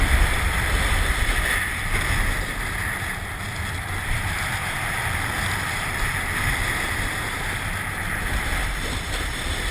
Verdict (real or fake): real